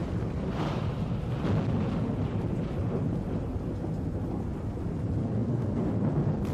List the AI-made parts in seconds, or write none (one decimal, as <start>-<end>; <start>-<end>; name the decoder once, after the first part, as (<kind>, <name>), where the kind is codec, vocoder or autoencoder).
5.2-5.9 (codec, SNAC)